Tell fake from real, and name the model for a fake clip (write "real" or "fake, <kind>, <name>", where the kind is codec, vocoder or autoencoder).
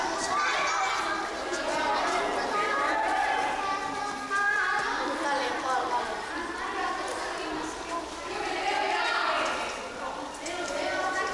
real